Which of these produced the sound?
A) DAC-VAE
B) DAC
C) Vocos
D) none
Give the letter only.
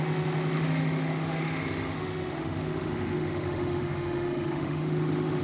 A